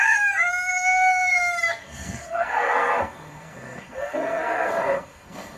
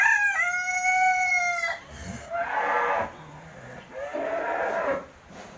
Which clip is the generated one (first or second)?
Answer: first